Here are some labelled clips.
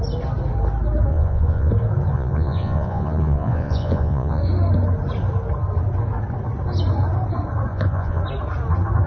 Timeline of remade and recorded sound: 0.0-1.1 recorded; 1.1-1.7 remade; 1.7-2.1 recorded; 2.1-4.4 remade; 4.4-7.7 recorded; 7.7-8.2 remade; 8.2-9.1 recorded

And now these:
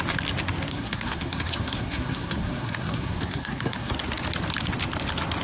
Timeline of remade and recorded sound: 0.0-0.7 recorded; 0.7-3.9 remade; 3.9-5.4 recorded

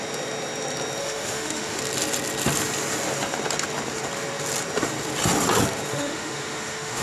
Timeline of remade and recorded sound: 0.0-1.0 recorded; 1.0-1.8 remade; 1.8-5.9 recorded; 5.9-7.0 remade

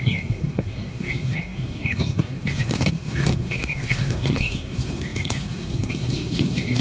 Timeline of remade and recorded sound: 0.0-6.8 remade

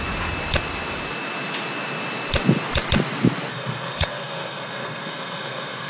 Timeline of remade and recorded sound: 0.0-3.5 recorded; 3.5-5.9 remade